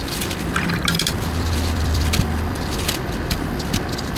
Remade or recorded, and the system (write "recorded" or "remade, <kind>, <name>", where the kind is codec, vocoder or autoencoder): remade, vocoder, BigVGAN v2